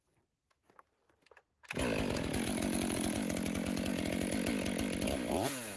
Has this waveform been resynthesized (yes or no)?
no